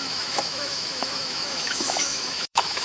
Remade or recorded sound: remade